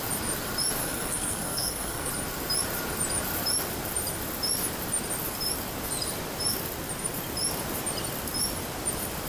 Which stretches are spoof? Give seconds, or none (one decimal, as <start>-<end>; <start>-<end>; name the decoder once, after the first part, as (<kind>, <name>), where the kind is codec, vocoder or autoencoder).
0.8-2.1 (codec, SNAC)